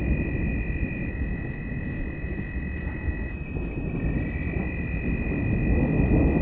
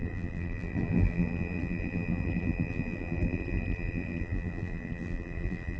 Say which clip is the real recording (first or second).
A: first